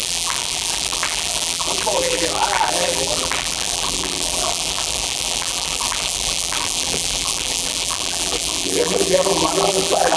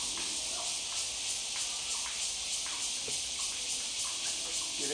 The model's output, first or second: first